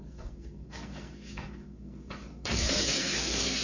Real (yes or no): no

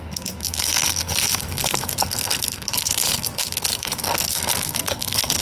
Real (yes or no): no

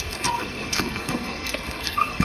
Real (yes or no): no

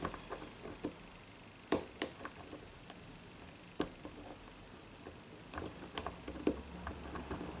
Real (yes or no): yes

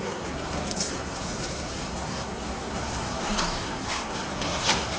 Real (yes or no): no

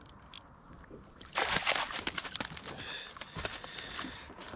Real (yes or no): yes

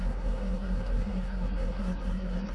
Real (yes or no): no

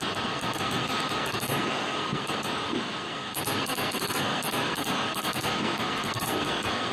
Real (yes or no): no